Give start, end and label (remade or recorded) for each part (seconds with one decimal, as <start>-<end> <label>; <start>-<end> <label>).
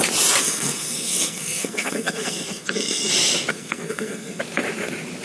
0.0-0.4 recorded; 0.4-3.1 remade; 3.1-3.5 recorded; 3.5-4.4 remade; 4.4-5.2 recorded